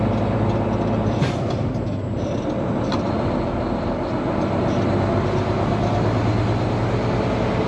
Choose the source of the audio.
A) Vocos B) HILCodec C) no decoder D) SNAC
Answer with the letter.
C